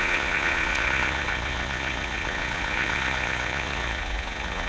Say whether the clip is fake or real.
fake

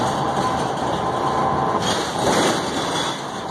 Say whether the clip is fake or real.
real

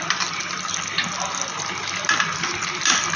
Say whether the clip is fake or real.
real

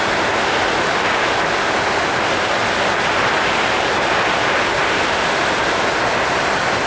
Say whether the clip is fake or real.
real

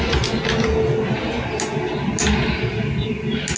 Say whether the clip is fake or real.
real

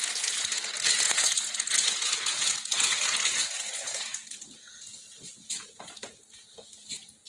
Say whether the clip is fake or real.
fake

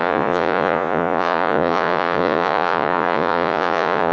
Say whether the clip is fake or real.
fake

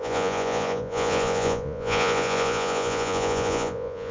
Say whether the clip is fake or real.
fake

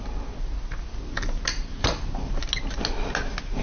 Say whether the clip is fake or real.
real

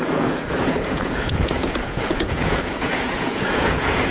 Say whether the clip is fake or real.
fake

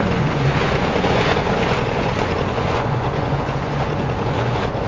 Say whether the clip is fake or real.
fake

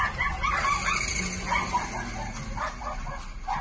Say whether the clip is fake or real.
real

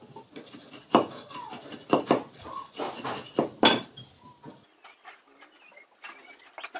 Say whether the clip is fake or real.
real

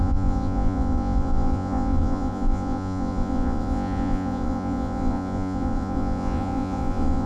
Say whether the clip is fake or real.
fake